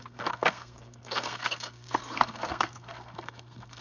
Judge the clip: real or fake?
fake